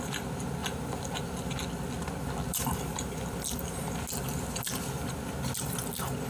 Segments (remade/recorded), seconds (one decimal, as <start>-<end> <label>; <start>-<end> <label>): 0.0-0.6 recorded; 0.6-1.4 remade; 1.4-2.5 recorded; 2.5-3.8 remade; 3.8-6.3 recorded

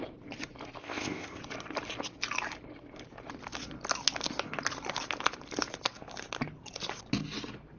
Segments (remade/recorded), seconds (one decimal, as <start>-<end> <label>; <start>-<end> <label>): 0.0-0.8 recorded; 0.8-1.4 remade; 1.4-7.8 recorded

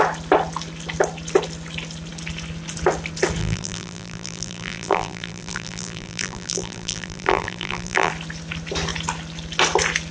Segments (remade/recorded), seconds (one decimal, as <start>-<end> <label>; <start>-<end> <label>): 0.0-3.4 recorded; 3.4-8.1 remade; 8.1-10.1 recorded

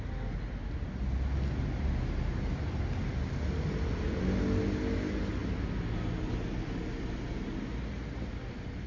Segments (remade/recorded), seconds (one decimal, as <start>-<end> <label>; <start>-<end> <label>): 0.0-8.9 recorded

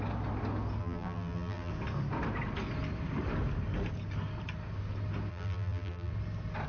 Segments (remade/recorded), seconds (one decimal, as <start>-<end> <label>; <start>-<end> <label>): 0.0-0.8 recorded; 0.8-1.7 remade; 1.7-5.3 recorded; 5.3-6.1 remade; 6.1-6.7 recorded